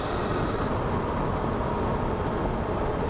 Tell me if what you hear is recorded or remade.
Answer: recorded